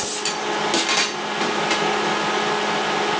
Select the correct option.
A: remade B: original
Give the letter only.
B